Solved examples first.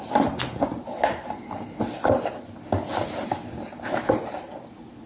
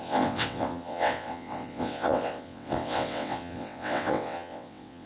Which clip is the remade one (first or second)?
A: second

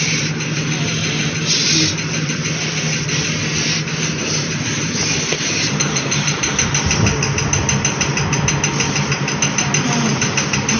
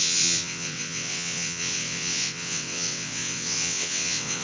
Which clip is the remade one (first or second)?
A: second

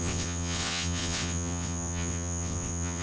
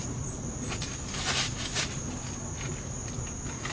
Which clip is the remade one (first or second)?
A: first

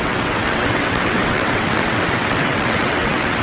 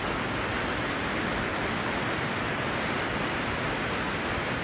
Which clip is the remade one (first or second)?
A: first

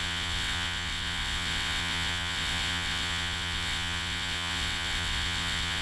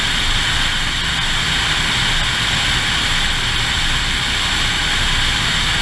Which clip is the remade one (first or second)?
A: first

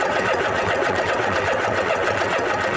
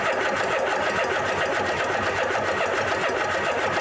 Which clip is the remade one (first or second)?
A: first